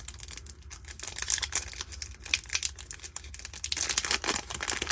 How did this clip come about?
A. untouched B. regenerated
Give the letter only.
A